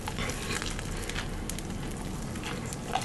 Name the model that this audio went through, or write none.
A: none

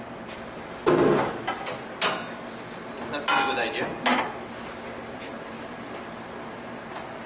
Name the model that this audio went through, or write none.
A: none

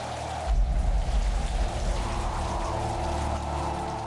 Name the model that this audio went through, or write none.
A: none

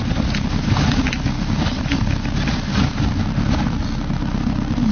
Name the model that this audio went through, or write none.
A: none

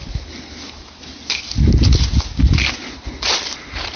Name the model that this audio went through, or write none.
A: none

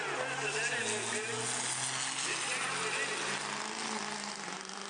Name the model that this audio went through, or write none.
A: none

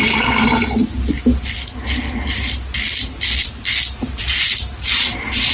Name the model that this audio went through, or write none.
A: none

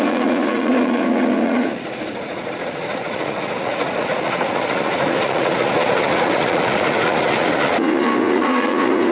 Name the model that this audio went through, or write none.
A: vocoder, Vocos